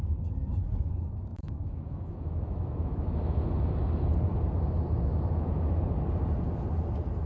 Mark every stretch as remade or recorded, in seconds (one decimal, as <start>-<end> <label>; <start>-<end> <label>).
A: 0.0-1.3 recorded; 1.3-3.4 remade; 3.4-5.1 recorded; 5.1-5.8 remade; 5.8-7.3 recorded